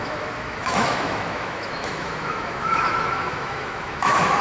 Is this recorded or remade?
remade